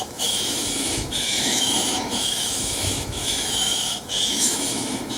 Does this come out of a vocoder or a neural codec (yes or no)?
yes